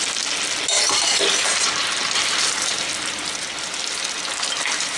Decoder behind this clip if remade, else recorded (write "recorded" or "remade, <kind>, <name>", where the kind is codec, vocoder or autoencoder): recorded